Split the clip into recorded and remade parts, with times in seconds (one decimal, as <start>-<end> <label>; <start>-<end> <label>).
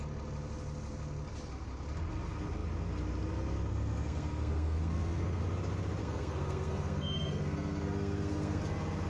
0.0-3.7 recorded; 3.7-5.4 remade; 5.4-6.0 recorded; 6.0-8.6 remade; 8.6-9.1 recorded